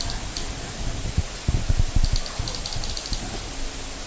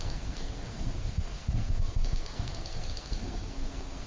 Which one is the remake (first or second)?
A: second